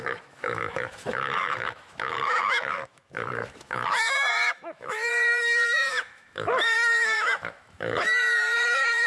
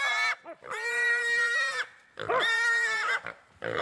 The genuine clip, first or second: second